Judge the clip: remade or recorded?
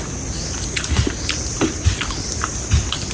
recorded